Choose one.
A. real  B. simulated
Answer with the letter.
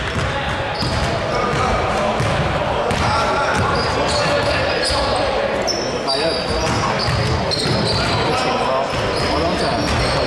A